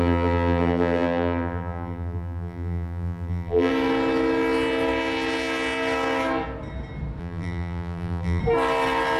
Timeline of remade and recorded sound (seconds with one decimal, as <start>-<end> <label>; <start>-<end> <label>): 0.0-3.7 remade; 3.7-7.2 recorded; 7.2-8.4 remade; 8.4-9.2 recorded